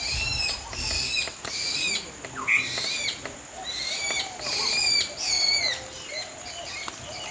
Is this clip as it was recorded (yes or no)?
yes